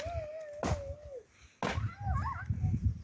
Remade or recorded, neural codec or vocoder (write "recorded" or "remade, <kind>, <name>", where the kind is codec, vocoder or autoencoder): recorded